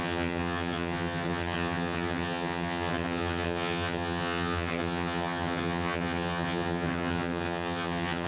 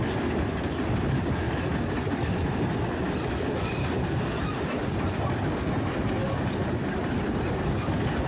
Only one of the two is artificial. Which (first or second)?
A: first